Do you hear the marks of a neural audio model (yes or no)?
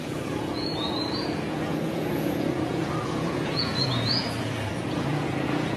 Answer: yes